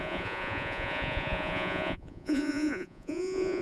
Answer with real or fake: fake